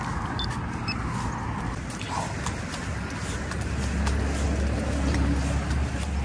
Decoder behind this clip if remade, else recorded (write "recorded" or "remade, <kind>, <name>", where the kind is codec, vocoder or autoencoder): recorded